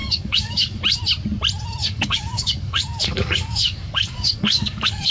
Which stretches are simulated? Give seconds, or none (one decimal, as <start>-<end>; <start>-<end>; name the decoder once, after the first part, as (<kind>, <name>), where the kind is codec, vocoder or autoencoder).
0.0-0.8 (codec, DAC); 1.8-5.1